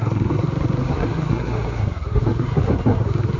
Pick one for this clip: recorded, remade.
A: remade